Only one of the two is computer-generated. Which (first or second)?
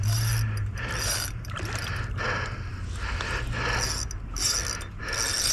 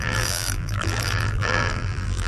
second